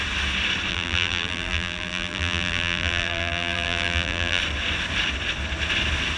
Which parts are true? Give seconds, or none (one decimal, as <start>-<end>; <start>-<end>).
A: 0.0-0.7; 4.4-6.2